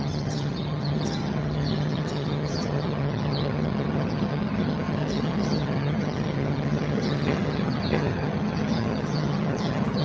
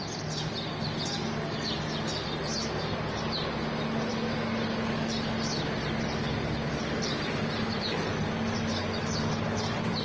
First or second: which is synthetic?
first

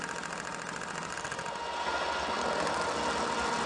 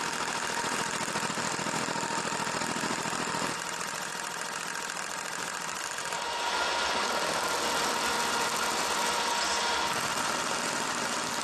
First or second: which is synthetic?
second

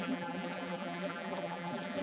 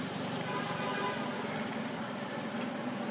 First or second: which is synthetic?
first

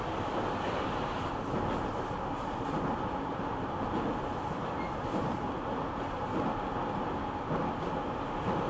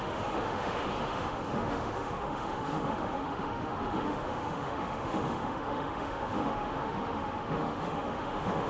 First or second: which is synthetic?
second